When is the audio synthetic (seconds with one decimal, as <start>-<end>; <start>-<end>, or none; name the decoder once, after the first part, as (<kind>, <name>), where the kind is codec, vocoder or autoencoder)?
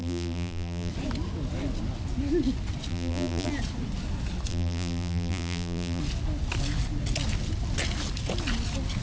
0.0-0.9 (vocoder, BigVGAN v2); 2.9-3.5; 4.5-6.0